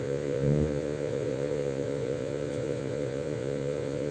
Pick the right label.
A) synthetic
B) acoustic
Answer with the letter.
A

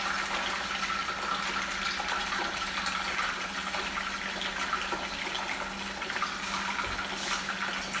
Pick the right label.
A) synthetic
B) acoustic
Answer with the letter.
B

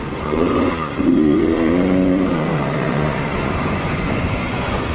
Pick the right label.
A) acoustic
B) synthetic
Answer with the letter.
B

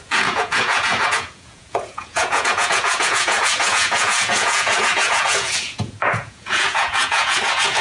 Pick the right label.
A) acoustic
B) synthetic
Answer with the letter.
B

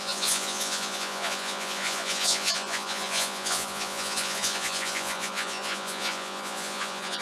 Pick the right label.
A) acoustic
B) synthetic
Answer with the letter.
B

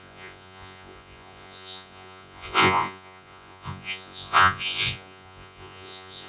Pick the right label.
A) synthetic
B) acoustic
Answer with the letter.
A